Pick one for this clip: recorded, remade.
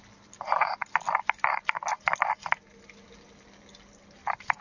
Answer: recorded